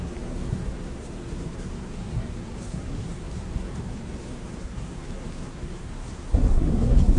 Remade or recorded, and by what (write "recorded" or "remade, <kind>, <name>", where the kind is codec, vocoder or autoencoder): remade, codec, SNAC